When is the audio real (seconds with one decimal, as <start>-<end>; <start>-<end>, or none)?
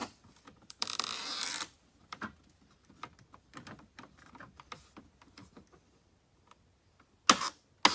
4.3-7.9